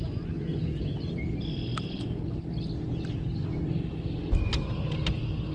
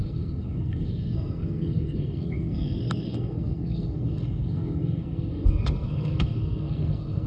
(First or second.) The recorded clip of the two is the first